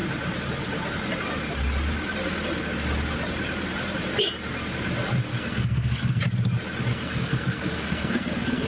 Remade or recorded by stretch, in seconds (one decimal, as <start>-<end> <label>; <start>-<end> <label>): 0.0-5.3 recorded; 5.3-6.2 remade; 6.2-6.9 recorded; 6.9-8.7 remade